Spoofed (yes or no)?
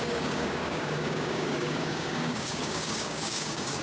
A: yes